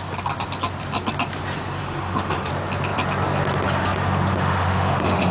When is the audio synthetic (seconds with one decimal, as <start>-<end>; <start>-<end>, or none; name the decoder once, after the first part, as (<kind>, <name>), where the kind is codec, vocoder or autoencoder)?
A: 1.8-2.5 (autoencoder, DAC-VAE); 4.3-5.3